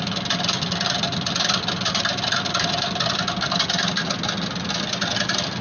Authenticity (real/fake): real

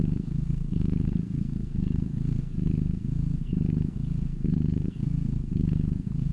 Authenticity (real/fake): fake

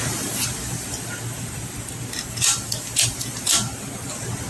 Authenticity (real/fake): real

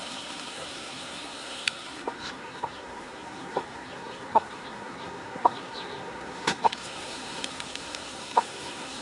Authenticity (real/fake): fake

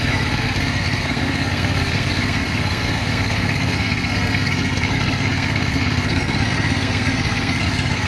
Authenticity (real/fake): fake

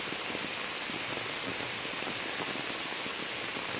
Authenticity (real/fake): real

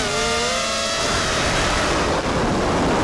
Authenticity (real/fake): real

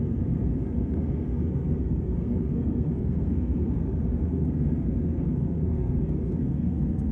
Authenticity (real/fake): fake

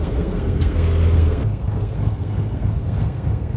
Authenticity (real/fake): fake